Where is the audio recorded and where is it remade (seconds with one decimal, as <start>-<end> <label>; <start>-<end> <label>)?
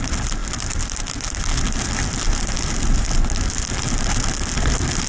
0.0-5.1 recorded